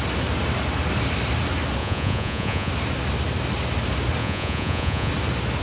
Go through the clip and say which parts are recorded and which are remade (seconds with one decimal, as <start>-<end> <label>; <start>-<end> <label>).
0.0-1.8 recorded; 1.8-2.7 remade; 2.7-4.2 recorded; 4.2-5.1 remade; 5.1-5.6 recorded